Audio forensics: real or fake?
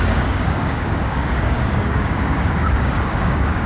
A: fake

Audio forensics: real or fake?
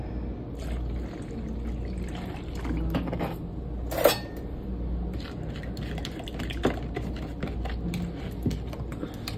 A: real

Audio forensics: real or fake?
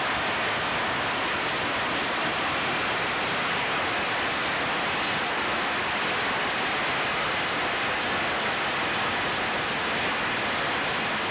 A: real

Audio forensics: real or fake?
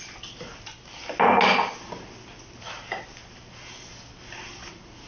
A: real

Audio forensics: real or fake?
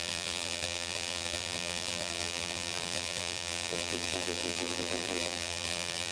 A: fake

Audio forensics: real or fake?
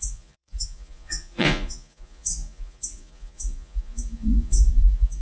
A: fake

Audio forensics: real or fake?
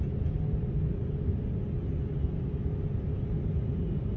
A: real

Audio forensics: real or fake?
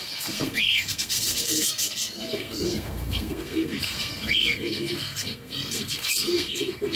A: fake